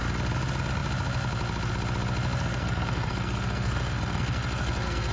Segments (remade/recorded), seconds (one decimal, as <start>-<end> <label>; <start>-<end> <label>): 0.0-2.5 recorded; 2.5-5.1 remade